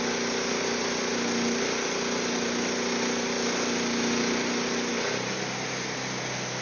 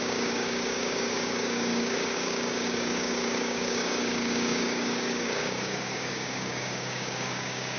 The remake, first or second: second